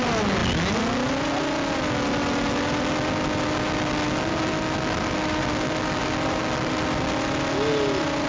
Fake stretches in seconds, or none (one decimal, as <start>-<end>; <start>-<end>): none